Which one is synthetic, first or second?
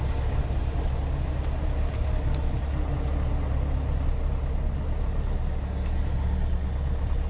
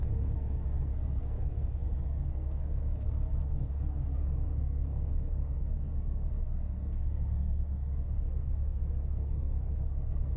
second